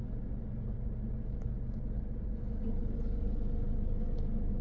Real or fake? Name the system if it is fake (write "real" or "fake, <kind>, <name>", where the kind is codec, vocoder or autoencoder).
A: real